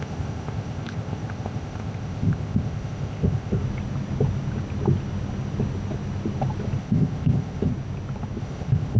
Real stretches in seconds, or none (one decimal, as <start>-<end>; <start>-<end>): 3.6-6.8; 7.7-8.4